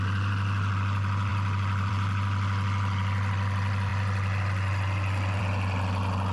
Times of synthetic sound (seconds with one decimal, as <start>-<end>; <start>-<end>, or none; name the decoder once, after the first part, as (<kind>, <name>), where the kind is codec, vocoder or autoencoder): none

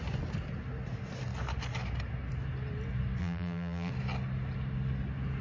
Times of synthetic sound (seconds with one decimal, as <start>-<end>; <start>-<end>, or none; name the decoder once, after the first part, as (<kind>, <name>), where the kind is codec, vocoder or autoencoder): 3.2-3.9 (vocoder, BigVGAN v2)

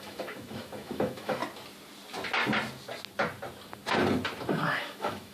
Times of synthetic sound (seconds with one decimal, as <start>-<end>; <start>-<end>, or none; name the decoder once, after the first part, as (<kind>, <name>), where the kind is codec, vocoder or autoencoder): 0.0-1.4 (autoencoder, DAC-VAE); 4.6-5.3

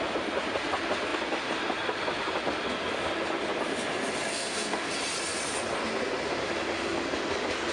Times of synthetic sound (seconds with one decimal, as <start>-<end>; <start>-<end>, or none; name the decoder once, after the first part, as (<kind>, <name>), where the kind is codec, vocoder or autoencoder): 4.3-4.9 (codec, SNAC)

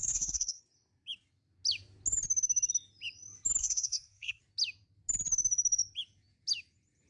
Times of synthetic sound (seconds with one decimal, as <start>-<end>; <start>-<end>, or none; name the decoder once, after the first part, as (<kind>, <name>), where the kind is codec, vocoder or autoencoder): 0.0-0.6 (codec, SNAC); 3.6-4.4

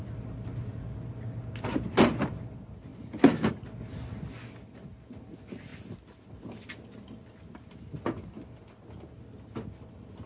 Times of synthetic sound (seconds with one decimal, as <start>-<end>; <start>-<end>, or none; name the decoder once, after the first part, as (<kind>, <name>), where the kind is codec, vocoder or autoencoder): none

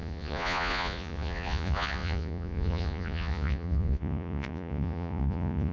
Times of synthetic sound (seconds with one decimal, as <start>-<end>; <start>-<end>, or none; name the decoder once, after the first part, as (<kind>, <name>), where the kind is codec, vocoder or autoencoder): 0.0-5.7 (vocoder, Vocos)